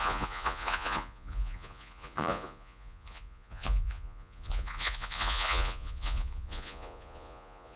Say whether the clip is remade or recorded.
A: remade